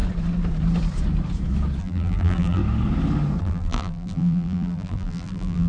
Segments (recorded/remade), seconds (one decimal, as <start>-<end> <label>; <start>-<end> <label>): 0.0-1.8 recorded; 1.8-2.6 remade; 2.6-3.4 recorded; 3.4-5.7 remade